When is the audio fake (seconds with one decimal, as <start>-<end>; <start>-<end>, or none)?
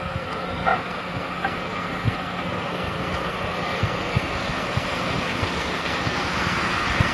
0.0-7.1